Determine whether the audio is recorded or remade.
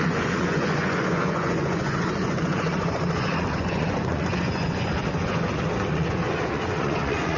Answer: remade